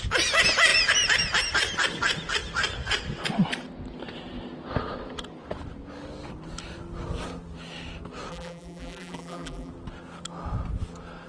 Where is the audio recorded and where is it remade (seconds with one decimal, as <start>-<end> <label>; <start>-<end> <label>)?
0.0-8.3 recorded; 8.3-9.7 remade; 9.7-11.3 recorded